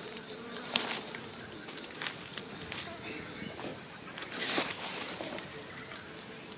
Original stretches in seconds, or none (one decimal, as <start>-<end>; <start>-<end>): 0.8-3.7; 5.7-6.6